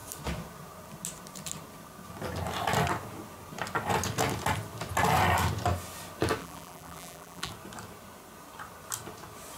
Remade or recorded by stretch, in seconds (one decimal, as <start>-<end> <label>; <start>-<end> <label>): 0.0-6.4 recorded; 6.4-7.5 remade; 7.5-9.6 recorded